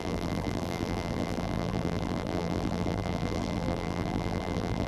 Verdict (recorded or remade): remade